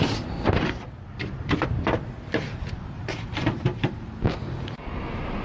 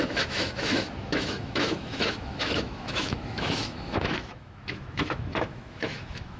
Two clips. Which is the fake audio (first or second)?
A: second